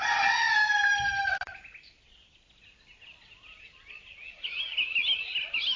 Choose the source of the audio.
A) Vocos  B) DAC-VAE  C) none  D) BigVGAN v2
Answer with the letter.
C